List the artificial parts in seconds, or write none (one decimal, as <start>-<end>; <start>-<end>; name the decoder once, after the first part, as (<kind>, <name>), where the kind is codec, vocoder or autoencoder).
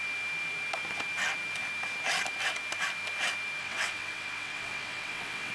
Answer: 3.6-5.5 (vocoder, WaveNeXt)